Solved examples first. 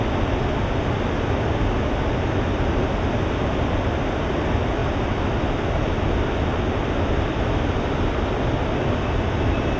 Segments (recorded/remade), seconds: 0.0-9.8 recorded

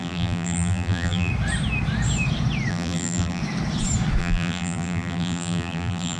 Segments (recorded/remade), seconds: 0.0-1.3 remade; 1.3-2.7 recorded; 2.7-3.4 remade; 3.4-4.2 recorded; 4.2-6.2 remade

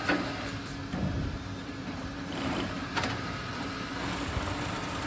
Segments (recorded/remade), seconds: 0.0-1.6 recorded; 1.6-5.1 remade